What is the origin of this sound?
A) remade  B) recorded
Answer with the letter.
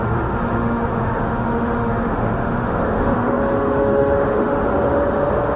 A